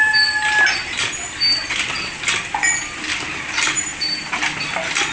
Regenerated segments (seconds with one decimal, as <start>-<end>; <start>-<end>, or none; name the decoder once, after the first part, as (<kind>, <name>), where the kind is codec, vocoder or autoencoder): 0.8-1.3 (vocoder, BigVGAN v2); 3.9-4.4